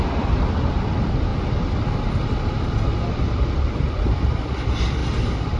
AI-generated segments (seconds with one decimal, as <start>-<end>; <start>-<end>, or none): 0.0-1.3; 2.5-5.0